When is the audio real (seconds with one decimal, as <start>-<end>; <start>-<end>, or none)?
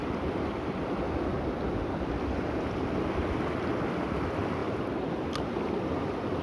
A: 0.0-6.4